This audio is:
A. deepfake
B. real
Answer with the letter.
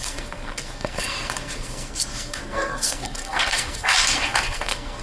A